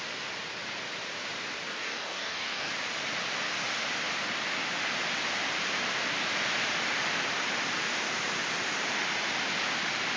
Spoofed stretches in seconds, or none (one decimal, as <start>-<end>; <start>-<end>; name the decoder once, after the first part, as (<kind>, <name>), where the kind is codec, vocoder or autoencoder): 1.7-2.7 (codec, DAC)